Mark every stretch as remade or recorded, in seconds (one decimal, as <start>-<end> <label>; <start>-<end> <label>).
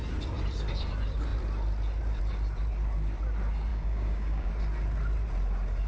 0.0-3.7 recorded; 3.7-4.5 remade; 4.5-5.9 recorded